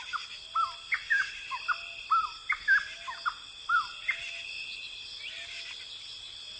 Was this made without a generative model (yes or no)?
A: yes